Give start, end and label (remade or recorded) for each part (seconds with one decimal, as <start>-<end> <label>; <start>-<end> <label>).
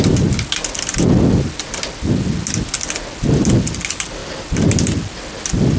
0.0-5.8 recorded